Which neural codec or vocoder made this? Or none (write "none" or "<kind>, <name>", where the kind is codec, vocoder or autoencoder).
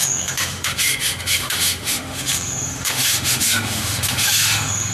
autoencoder, DAC-VAE